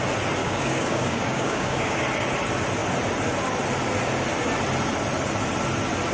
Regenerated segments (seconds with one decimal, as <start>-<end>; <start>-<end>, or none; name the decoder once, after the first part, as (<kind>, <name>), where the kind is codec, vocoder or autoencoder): 0.4-2.0 (codec, DAC)